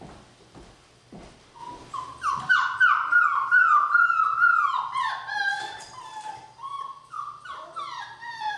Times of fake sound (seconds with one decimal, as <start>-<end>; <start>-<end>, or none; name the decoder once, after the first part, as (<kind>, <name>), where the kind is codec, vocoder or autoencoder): none